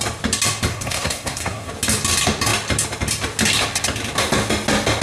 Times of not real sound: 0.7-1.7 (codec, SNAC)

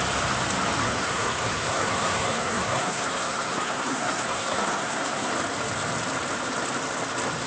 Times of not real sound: 0.8-5.3 (codec, SNAC)

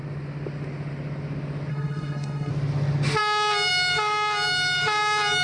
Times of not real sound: 1.7-2.5 (codec, SNAC)

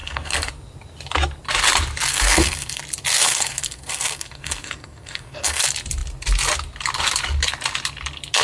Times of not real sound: 0.0-0.5 (codec, SNAC); 2.1-2.8; 3.2-5.6

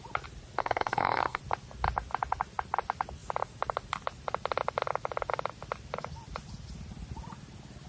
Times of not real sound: 0.6-1.4 (codec, SNAC)

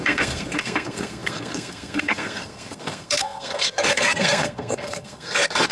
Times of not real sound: 0.0-5.7 (codec, SNAC)

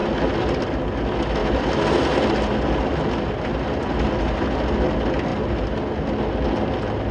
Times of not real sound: none